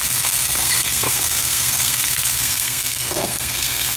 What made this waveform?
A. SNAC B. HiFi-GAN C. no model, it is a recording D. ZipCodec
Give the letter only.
A